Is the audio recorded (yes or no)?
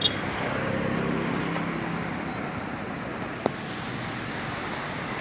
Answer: yes